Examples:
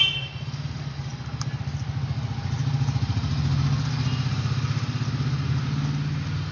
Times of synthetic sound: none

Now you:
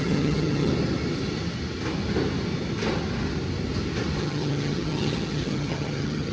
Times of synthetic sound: 0.0-0.7; 4.2-6.3

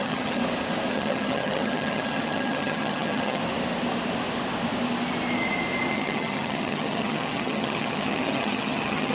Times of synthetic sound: 0.0-0.4; 0.9-3.4; 5.9-9.1

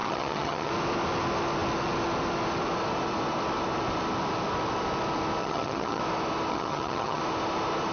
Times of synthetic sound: 0.0-0.7; 5.4-6.0; 6.5-7.2